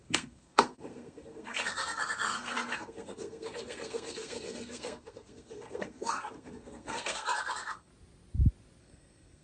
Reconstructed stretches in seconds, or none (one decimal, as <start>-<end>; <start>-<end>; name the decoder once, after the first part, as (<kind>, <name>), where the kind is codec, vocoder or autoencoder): 0.0-7.9 (codec, SNAC); 8.8-9.4